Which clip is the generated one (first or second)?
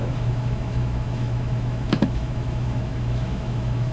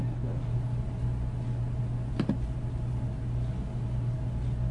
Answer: first